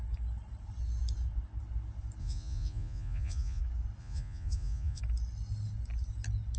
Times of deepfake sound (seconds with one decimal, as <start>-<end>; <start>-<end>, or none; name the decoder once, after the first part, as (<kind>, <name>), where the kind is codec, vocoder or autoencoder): 2.2-3.6 (vocoder, Vocos); 4.0-5.0

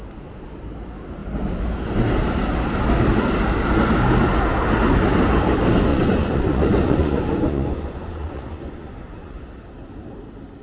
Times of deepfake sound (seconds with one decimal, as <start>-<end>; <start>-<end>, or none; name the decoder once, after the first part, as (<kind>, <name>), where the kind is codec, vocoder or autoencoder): 5.9-9.4 (vocoder, Vocos)

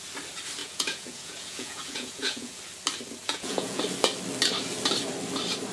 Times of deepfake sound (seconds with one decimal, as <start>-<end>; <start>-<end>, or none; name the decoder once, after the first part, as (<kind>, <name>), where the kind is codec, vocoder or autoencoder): 0.6-2.6 (vocoder, Vocos); 3.2-3.8

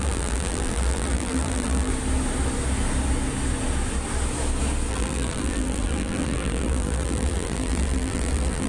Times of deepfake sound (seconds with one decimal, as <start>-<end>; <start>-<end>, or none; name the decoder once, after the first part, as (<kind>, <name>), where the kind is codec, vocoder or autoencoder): 0.0-1.9 (vocoder, BigVGAN v2); 4.9-8.7

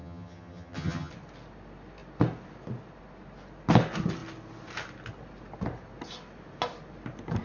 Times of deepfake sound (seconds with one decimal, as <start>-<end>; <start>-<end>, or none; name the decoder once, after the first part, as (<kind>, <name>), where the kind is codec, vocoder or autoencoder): 0.0-1.1 (vocoder, HiFi-GAN)

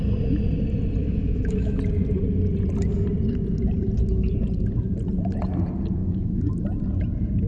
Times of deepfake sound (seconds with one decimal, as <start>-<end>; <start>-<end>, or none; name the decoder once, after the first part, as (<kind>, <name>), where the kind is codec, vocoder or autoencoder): 1.0-1.8 (autoencoder, DAC-VAE); 6.0-6.5

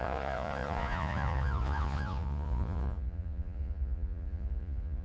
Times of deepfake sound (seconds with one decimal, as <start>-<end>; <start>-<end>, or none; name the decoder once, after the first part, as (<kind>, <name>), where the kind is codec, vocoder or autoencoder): 0.0-5.0 (vocoder, Vocos)

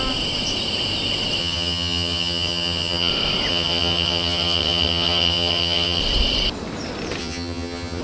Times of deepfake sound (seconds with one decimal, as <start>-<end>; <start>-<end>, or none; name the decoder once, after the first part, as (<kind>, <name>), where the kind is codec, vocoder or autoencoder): 1.4-3.1 (vocoder, HiFi-GAN); 3.5-6.0; 7.2-8.0